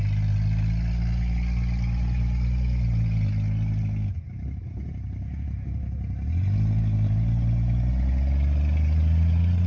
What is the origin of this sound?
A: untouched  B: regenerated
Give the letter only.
A